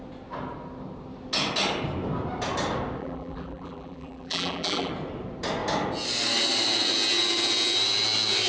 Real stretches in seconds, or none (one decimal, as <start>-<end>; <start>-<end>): 0.0-3.0; 4.9-8.5